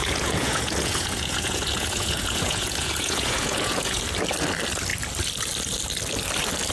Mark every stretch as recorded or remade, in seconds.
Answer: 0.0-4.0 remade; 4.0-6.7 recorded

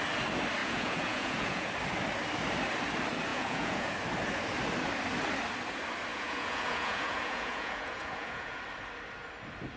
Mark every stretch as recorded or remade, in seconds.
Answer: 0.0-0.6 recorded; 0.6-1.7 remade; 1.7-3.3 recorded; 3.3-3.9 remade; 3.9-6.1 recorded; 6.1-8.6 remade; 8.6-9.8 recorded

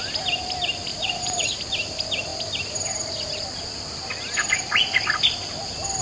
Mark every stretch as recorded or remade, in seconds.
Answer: 0.0-0.9 recorded; 0.9-1.6 remade; 1.6-6.0 recorded